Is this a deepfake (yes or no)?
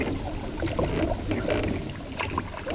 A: no